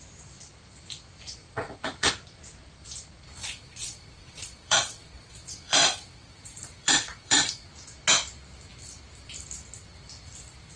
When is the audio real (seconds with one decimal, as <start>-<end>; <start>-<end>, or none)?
0.0-1.4; 2.1-3.4; 7.7-10.8